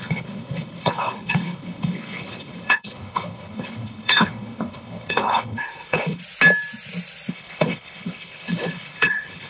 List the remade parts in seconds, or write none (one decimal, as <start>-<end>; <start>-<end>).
0.0-6.2; 7.3-9.5